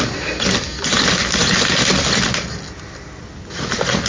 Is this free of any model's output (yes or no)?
yes